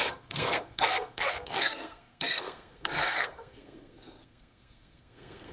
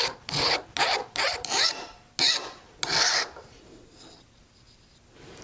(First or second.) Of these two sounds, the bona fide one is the second